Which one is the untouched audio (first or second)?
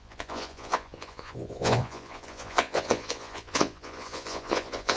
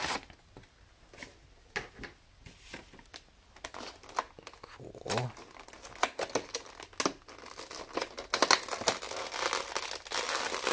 second